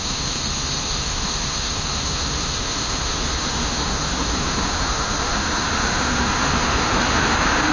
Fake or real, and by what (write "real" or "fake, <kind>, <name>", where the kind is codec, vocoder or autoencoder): fake, autoencoder, DAC-VAE